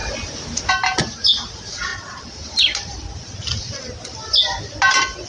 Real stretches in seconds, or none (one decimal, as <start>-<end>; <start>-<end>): 0.0-5.3